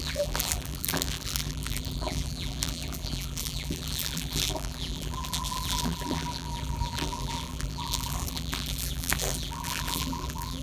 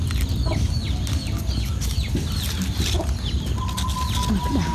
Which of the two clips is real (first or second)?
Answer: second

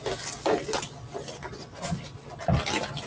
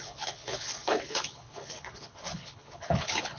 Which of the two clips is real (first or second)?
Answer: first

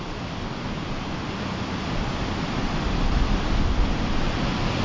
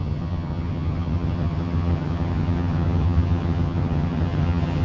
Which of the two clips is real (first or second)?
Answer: first